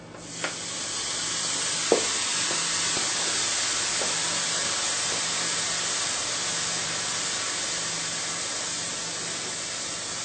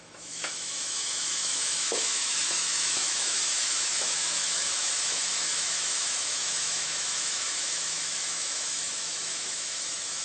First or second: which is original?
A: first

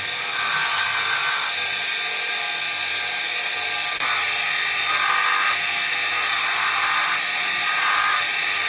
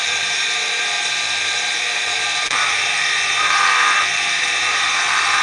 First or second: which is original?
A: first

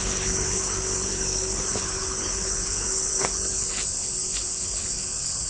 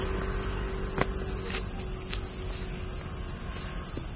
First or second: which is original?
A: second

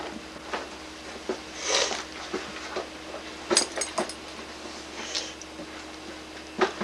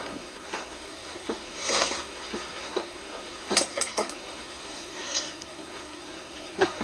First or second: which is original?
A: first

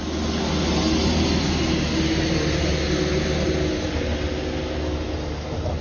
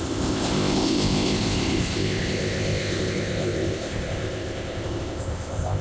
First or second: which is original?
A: first